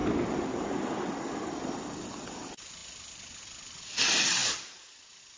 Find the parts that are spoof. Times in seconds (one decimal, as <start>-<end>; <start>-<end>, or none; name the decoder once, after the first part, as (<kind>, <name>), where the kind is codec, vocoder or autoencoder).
none